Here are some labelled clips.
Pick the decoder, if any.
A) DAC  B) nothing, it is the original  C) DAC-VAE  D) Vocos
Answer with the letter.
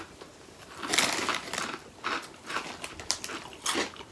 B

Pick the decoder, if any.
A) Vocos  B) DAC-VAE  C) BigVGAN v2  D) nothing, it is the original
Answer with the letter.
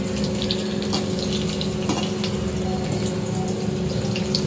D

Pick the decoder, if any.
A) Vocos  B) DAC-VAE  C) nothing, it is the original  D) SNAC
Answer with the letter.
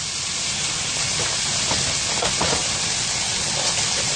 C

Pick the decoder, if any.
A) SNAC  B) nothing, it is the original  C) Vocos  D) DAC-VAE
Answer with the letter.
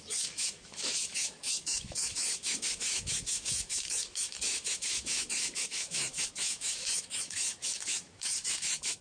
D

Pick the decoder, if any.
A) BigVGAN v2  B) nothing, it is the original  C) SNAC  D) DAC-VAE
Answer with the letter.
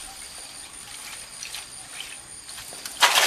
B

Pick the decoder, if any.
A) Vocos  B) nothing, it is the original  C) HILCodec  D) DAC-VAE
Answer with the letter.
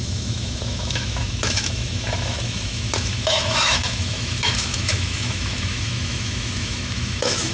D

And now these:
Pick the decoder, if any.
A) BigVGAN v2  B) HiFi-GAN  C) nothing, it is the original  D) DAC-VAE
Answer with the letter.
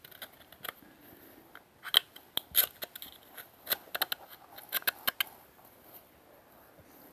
C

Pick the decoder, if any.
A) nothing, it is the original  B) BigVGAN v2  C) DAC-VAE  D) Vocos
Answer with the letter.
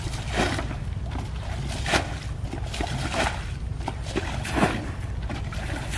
A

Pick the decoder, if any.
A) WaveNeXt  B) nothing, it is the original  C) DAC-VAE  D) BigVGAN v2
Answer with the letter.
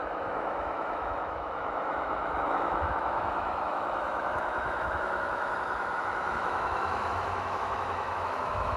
C